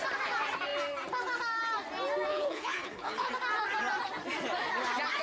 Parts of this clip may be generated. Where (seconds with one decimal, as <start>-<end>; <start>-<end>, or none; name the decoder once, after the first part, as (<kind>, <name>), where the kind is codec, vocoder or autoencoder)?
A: 2.3-3.3 (codec, HILCodec)